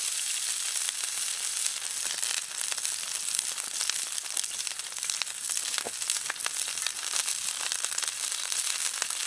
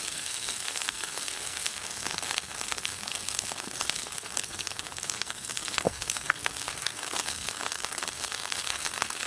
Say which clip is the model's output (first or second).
second